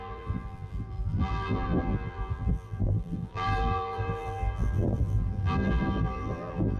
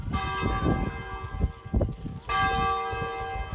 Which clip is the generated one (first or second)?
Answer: first